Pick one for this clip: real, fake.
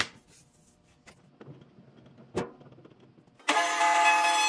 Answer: real